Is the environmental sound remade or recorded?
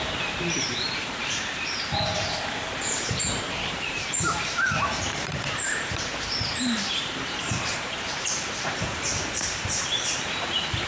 remade